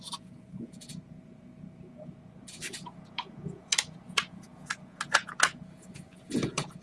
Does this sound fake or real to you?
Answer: fake